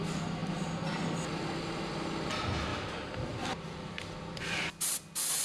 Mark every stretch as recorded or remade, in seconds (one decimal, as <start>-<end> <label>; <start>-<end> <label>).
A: 0.0-5.4 recorded